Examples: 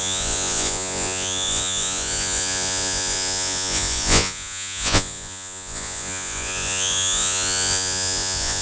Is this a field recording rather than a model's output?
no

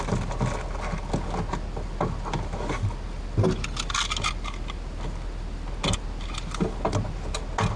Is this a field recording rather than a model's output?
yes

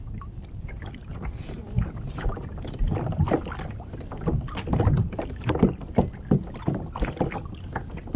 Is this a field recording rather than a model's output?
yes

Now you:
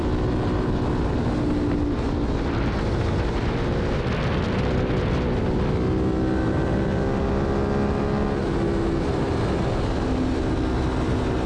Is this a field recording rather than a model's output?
yes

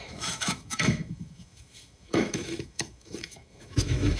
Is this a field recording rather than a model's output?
no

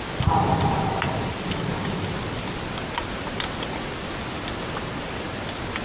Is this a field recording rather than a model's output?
yes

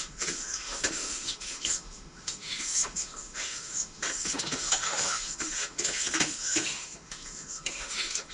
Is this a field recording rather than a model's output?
no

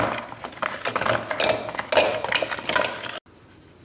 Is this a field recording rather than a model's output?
yes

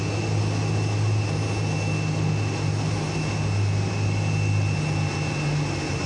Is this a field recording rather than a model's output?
yes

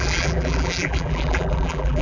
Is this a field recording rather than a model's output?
no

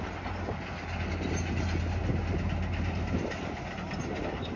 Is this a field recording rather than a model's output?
yes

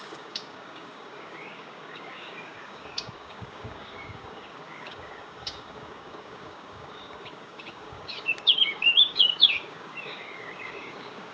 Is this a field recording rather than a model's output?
no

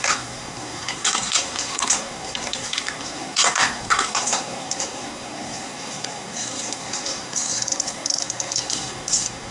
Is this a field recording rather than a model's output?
no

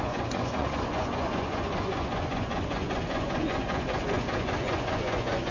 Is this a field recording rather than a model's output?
no